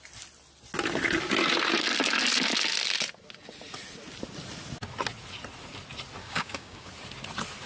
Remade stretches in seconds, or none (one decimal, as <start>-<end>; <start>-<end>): 6.2-6.9